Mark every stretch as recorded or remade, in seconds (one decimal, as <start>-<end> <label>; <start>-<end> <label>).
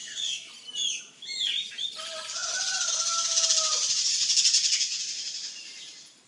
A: 0.0-0.5 remade; 0.5-6.3 recorded